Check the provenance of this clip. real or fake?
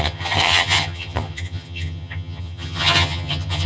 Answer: fake